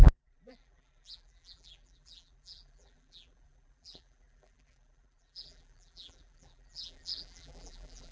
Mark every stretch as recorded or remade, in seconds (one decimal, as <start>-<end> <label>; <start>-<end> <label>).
0.0-8.1 remade